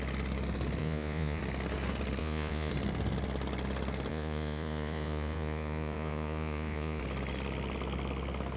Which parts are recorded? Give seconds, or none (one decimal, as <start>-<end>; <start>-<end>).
0.0-0.8; 1.4-2.2; 2.7-4.1; 7.0-8.6